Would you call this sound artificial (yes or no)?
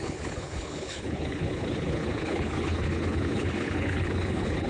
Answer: yes